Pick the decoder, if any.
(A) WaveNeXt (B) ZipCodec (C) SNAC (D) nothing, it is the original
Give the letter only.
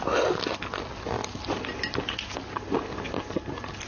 D